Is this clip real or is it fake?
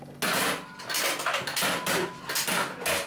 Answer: real